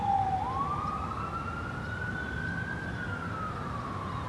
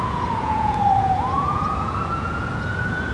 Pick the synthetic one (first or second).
second